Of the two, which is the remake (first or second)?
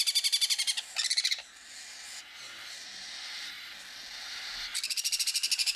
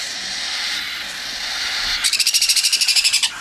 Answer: second